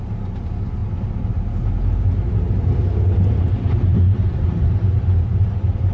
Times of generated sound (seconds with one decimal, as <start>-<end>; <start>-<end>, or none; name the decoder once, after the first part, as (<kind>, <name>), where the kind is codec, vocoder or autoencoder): 4.1-4.7 (vocoder, BigVGAN v2)